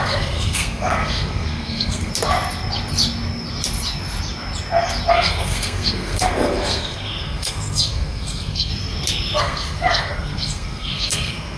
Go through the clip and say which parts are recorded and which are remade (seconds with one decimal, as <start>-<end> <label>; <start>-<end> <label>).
0.0-2.1 remade; 2.1-5.1 recorded; 5.1-8.7 remade; 8.7-9.4 recorded; 9.4-11.6 remade